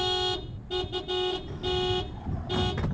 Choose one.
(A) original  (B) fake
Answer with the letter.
A